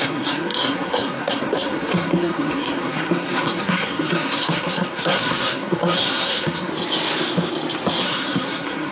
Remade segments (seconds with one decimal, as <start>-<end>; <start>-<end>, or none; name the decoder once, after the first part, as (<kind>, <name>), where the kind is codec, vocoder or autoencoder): 0.0-6.7 (codec, SNAC); 8.0-8.9